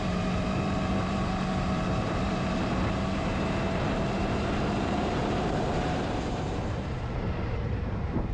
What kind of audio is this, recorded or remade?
remade